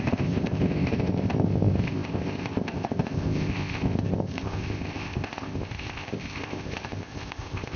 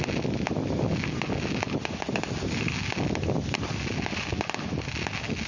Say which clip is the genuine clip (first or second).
second